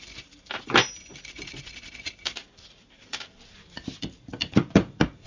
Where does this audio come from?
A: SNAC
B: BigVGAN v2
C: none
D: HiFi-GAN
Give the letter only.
B